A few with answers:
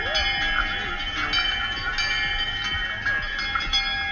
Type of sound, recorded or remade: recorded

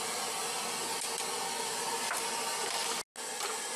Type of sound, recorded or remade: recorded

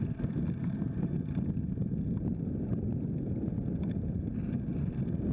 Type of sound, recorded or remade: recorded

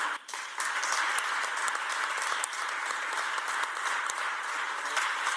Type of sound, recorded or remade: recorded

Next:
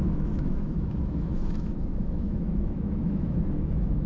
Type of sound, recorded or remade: remade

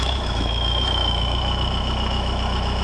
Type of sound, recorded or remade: remade